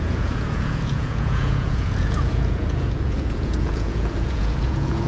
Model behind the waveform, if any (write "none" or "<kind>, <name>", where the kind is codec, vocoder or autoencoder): vocoder, Vocos